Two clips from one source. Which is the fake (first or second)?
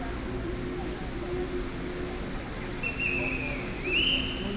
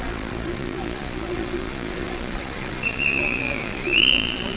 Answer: second